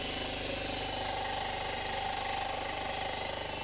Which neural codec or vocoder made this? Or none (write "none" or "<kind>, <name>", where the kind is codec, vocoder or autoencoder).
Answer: none